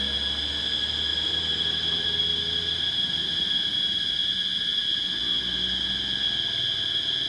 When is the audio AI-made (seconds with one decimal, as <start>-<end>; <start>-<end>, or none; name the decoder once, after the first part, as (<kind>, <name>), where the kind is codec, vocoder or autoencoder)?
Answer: 1.1-4.0 (vocoder, BigVGAN v2)